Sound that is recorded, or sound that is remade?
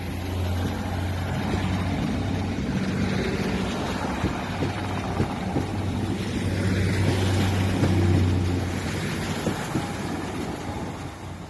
recorded